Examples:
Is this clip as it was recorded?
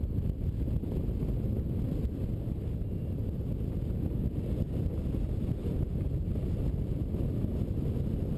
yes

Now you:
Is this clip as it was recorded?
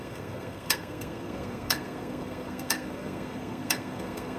no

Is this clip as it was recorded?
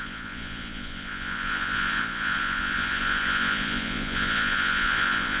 no